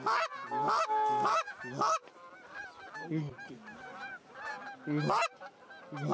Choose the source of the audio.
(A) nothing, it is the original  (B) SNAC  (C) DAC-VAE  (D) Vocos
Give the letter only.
A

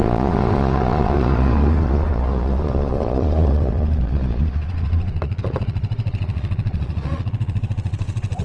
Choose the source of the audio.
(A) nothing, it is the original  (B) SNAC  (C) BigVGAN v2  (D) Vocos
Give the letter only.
D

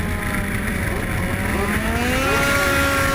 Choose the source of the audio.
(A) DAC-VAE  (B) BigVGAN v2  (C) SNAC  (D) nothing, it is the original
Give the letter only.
D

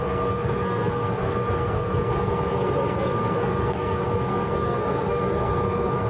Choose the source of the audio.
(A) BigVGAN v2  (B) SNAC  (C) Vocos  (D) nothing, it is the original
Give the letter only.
B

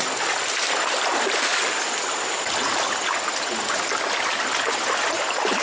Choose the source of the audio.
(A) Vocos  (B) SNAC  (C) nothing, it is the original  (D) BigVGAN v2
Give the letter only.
C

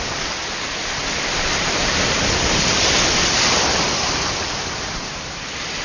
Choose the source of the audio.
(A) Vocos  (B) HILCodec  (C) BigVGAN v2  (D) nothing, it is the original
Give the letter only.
C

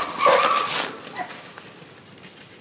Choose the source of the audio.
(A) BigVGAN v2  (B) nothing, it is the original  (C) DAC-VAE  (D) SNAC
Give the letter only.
B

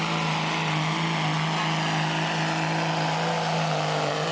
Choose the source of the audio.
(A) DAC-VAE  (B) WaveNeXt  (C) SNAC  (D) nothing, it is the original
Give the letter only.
D